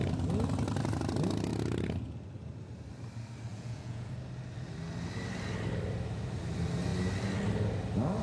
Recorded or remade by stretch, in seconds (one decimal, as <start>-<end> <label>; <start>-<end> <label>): 0.0-3.5 recorded; 3.5-4.1 remade; 4.1-8.2 recorded